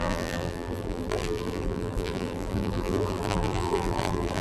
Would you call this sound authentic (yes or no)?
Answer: no